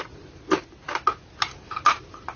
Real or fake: real